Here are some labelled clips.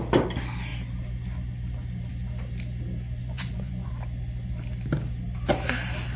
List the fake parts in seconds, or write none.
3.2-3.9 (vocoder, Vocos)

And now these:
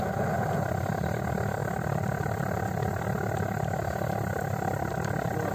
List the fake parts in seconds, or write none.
none

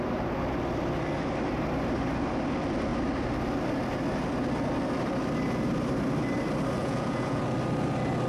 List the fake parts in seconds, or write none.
6.8-7.4 (vocoder, Vocos)

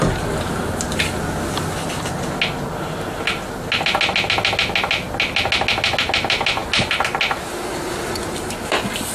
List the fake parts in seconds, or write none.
none

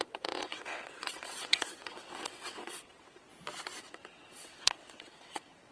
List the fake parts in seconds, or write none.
0.0-3.3 (vocoder, WaveNeXt); 3.8-5.7

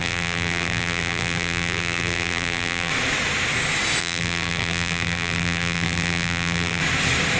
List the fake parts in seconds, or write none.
0.0-2.9 (vocoder, BigVGAN v2); 4.0-6.8

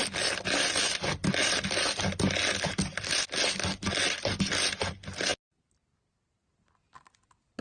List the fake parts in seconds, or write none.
none

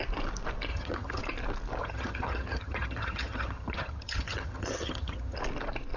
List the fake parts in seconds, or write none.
0.7-1.2 (vocoder, HiFi-GAN); 1.8-5.4